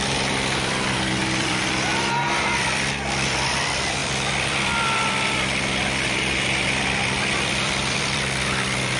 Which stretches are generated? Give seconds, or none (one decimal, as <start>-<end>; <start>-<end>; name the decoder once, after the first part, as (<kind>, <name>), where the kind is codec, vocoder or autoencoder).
0.0-9.0 (vocoder, BigVGAN v2)

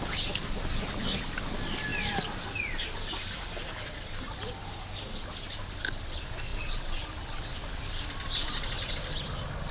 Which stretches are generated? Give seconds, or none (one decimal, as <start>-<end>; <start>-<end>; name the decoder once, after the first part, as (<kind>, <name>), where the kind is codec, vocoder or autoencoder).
none

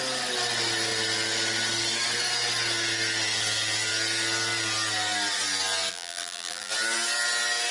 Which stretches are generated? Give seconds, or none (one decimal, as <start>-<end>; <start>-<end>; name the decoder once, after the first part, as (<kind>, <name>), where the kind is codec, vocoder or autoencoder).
5.9-6.7 (vocoder, BigVGAN v2)

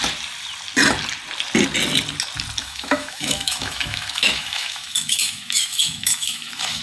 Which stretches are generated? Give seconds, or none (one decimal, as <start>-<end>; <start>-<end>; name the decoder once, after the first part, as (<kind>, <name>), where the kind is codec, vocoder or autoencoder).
2.6-6.8 (autoencoder, DAC-VAE)